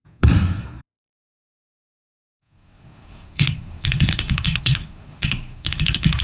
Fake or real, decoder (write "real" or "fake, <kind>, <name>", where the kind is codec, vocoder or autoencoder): fake, codec, SNAC